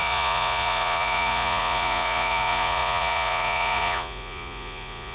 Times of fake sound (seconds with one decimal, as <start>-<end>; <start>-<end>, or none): 0.0-5.1